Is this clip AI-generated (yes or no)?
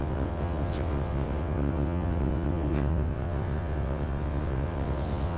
yes